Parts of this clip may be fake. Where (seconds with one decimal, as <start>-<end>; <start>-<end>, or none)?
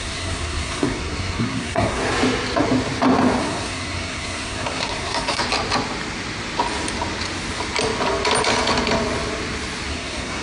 0.0-2.0; 3.4-5.4; 9.9-10.4